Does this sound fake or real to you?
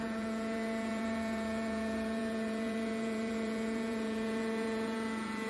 fake